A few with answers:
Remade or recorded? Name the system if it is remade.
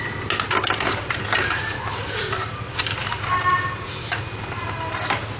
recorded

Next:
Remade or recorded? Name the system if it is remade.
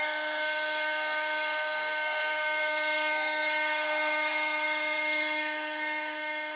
remade, codec, SNAC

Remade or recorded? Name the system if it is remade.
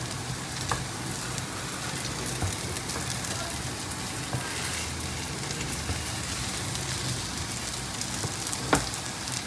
recorded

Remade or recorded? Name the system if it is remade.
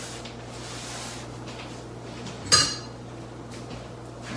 recorded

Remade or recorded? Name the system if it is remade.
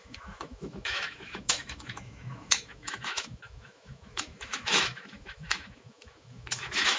remade, autoencoder, DAC-VAE